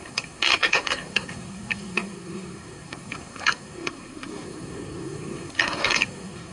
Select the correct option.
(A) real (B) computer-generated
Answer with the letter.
B